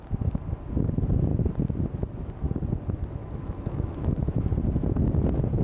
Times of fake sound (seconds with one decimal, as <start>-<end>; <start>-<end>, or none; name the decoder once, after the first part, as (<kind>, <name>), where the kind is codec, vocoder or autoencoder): 3.2-4.4 (autoencoder, DAC-VAE)